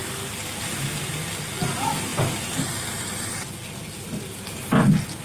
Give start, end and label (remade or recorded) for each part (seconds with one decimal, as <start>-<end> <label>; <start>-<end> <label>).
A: 0.0-5.2 recorded